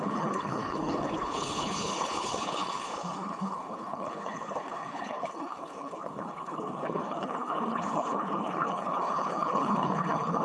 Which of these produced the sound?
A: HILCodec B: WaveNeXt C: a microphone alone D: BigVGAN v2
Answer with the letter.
A